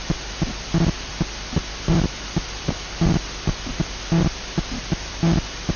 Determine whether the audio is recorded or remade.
recorded